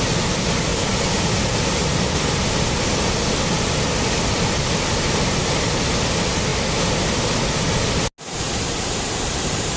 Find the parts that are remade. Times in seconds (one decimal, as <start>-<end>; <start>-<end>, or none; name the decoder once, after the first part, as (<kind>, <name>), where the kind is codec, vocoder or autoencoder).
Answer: none